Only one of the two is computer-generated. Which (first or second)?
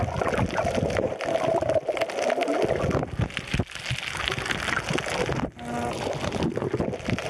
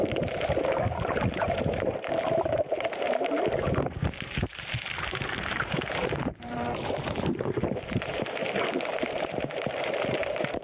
second